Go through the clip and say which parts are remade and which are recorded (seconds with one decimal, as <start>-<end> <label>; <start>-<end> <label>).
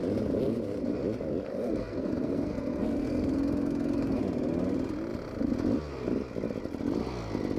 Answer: 0.0-1.5 recorded; 1.5-4.2 remade; 4.2-7.6 recorded